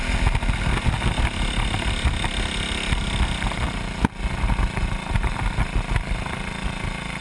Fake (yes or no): no